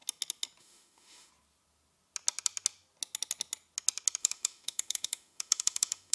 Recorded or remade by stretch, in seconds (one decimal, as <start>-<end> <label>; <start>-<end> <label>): 0.0-0.6 recorded; 0.6-1.3 remade; 1.3-4.2 recorded; 4.2-6.1 remade